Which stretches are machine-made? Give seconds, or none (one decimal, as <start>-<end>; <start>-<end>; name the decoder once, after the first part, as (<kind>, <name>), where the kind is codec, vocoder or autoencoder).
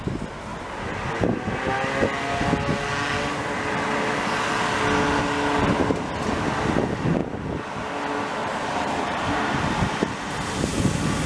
8.4-10.9 (vocoder, BigVGAN v2)